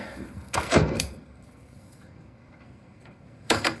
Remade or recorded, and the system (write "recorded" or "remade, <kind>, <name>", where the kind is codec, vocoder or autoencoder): remade, codec, SNAC